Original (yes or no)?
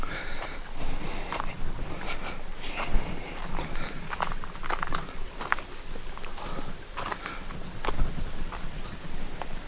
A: yes